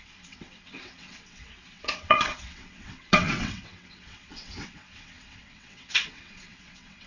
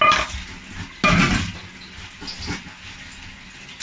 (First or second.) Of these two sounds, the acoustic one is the second